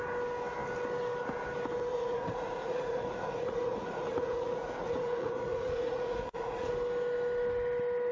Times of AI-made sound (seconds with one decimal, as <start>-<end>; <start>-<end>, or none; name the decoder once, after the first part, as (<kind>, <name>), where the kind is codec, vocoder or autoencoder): 1.9-6.7 (vocoder, Vocos)